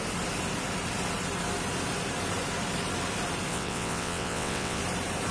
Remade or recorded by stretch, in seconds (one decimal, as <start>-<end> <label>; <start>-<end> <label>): 0.0-3.5 recorded; 3.5-4.8 remade; 4.8-5.3 recorded